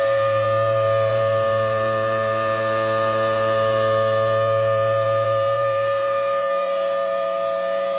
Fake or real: fake